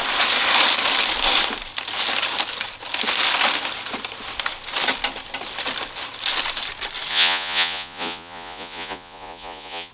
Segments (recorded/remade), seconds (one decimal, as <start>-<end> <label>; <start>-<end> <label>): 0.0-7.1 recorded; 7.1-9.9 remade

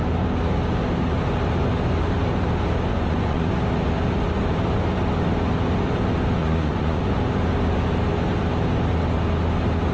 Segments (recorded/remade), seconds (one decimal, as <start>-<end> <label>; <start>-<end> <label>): 0.0-2.9 recorded; 2.9-3.5 remade; 3.5-6.4 recorded; 6.4-7.2 remade; 7.2-9.9 recorded

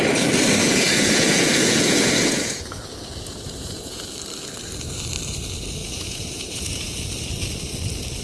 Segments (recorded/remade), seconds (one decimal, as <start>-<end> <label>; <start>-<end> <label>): 0.0-0.6 recorded; 0.6-4.0 remade; 4.0-5.8 recorded; 5.8-7.0 remade; 7.0-8.2 recorded

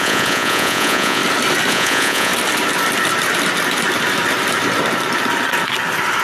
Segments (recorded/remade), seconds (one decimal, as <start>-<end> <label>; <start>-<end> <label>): 0.0-1.2 remade; 1.2-1.7 recorded; 1.7-2.3 remade; 2.3-6.2 recorded

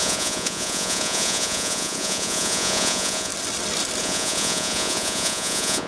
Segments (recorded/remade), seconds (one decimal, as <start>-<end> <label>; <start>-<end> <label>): 0.0-3.3 remade; 3.3-4.0 recorded; 4.0-5.9 remade

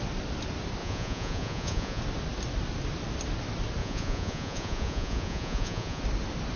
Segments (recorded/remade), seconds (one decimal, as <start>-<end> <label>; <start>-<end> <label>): 0.0-0.8 recorded; 0.8-2.0 remade; 2.0-3.8 recorded; 3.8-6.0 remade; 6.0-6.6 recorded

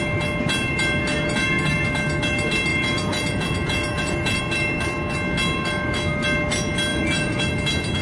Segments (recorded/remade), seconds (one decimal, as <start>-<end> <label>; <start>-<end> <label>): 0.0-2.7 recorded; 2.7-4.4 remade; 4.4-6.9 recorded; 6.9-7.4 remade; 7.4-8.0 recorded